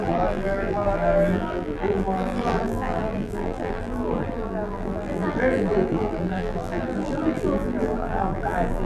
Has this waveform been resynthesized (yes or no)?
yes